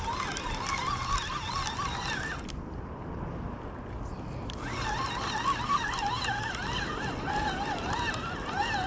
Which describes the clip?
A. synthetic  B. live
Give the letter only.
B